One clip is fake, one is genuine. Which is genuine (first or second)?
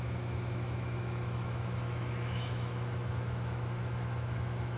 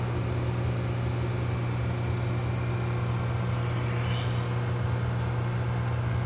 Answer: second